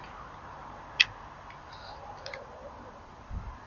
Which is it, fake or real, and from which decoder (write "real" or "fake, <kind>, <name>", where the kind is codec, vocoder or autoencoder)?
real